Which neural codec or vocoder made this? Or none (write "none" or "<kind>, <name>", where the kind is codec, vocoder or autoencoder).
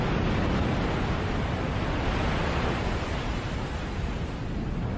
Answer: none